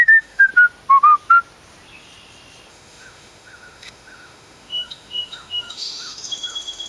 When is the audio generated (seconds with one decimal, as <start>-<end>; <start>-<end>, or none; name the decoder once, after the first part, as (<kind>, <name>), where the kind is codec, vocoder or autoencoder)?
0.0-0.5 (autoencoder, DAC-VAE); 2.7-6.9